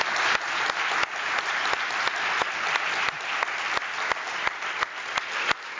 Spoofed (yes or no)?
no